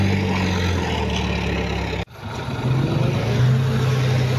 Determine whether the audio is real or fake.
real